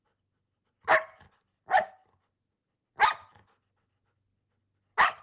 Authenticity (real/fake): real